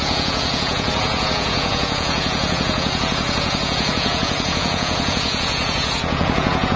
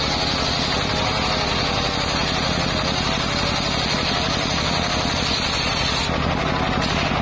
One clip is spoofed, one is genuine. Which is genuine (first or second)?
second